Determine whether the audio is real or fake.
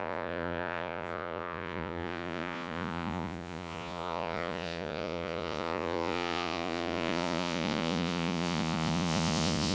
fake